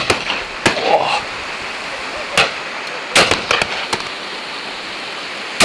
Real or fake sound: real